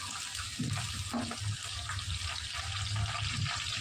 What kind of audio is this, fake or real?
real